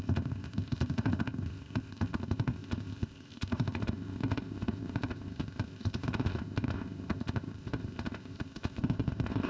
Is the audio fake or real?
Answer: fake